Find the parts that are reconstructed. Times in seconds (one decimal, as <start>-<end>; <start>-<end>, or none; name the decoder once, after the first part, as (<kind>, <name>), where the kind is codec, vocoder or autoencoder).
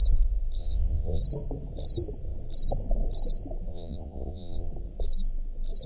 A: 0.6-1.2 (vocoder, Vocos); 3.7-4.7